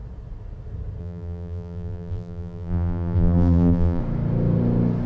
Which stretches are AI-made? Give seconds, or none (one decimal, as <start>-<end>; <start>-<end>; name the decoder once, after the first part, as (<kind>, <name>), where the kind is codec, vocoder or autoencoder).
1.0-4.0 (vocoder, BigVGAN v2)